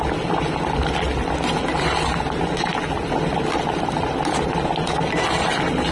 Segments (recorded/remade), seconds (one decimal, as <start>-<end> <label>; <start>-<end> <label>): 0.0-5.9 recorded

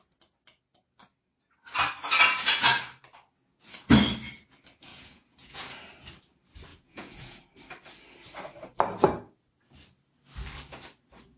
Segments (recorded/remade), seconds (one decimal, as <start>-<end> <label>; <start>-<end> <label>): 0.0-4.9 recorded; 4.9-5.8 remade; 5.8-6.7 recorded; 6.7-7.4 remade; 7.4-11.4 recorded

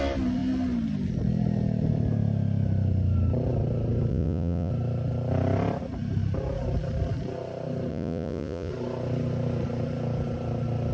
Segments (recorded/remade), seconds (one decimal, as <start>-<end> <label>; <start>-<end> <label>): 0.0-4.1 recorded; 4.1-4.7 remade; 4.7-7.9 recorded; 7.9-8.7 remade; 8.7-10.9 recorded

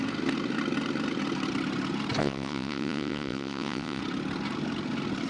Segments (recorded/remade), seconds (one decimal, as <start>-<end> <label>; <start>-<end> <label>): 0.0-2.2 recorded; 2.2-4.0 remade; 4.0-5.3 recorded

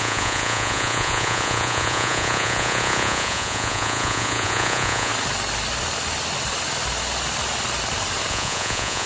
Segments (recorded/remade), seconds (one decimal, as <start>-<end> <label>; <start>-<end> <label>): 0.0-5.1 remade; 5.1-8.3 recorded; 8.3-9.1 remade

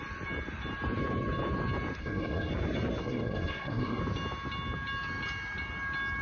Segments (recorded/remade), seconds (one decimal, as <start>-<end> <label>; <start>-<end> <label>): 0.0-2.0 recorded; 2.0-2.5 remade; 2.5-3.0 recorded; 3.0-4.0 remade; 4.0-6.2 recorded